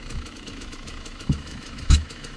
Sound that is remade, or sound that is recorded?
remade